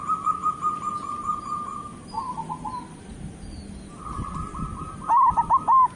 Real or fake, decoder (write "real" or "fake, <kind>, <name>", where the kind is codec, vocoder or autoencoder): real